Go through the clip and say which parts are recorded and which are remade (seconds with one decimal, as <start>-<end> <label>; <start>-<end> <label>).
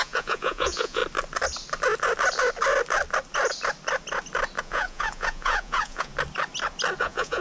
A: 0.0-1.0 remade; 1.0-4.6 recorded; 4.6-6.1 remade; 6.1-7.0 recorded; 7.0-7.4 remade